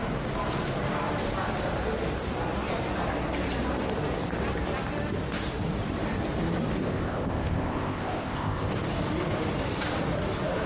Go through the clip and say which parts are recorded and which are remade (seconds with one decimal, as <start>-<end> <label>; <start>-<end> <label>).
0.0-6.8 recorded; 6.8-8.7 remade; 8.7-10.7 recorded